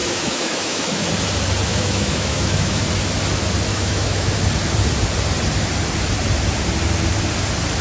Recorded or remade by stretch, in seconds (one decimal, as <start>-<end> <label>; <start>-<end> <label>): 0.0-1.1 remade; 1.1-1.7 recorded; 1.7-2.9 remade; 2.9-3.7 recorded; 3.7-4.3 remade; 4.3-7.8 recorded